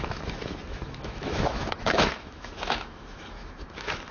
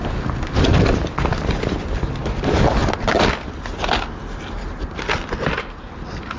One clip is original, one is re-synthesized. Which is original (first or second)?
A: second